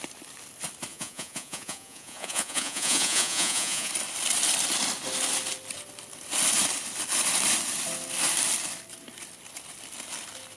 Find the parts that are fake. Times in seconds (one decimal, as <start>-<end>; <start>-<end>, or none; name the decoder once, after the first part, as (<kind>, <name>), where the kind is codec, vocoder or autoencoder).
0.9-3.9 (vocoder, Vocos)